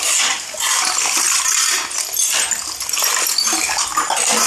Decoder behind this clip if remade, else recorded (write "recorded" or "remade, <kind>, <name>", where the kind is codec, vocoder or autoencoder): recorded